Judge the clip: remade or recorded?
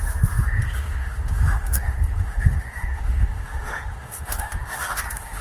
remade